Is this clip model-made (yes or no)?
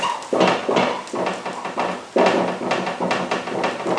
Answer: no